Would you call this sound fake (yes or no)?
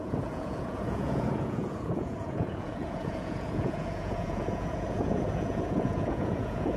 yes